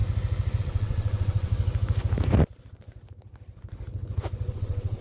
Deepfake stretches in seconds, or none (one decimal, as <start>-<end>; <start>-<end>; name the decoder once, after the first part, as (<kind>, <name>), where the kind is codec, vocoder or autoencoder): 0.6-1.5 (vocoder, WaveNeXt); 4.5-5.0